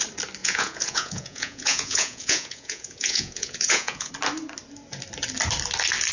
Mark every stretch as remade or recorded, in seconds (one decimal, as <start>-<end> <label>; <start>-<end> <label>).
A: 0.0-0.4 recorded; 0.4-4.1 remade; 4.1-6.1 recorded

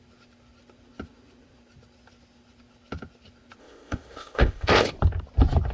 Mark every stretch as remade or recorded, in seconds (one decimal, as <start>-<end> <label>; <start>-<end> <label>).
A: 0.0-3.6 recorded; 3.6-4.9 remade; 4.9-5.7 recorded

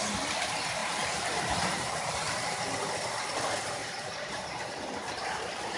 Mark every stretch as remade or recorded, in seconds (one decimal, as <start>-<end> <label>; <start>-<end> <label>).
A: 0.0-0.8 recorded; 0.8-2.6 remade; 2.6-3.8 recorded; 3.8-5.8 remade